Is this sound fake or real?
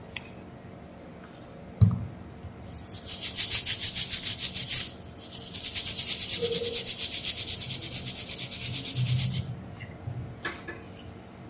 real